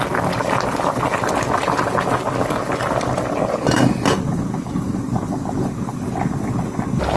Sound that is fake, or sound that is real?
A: real